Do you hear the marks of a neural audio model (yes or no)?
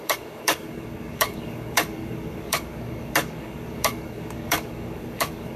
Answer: yes